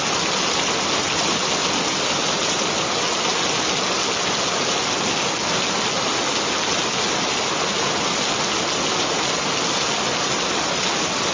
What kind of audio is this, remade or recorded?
recorded